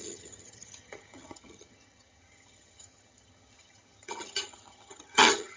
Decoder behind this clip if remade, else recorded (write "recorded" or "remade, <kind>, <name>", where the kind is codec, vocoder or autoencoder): remade, vocoder, HiFi-GAN